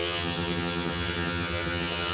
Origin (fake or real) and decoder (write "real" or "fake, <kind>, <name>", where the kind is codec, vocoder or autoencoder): fake, vocoder, HiFi-GAN